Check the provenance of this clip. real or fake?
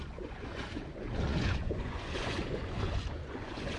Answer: fake